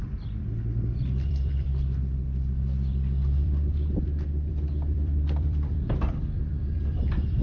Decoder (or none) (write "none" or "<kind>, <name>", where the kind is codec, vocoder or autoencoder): vocoder, BigVGAN v2